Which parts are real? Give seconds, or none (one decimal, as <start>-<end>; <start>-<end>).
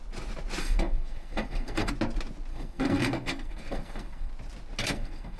0.0-0.6; 1.9-2.5; 4.3-4.8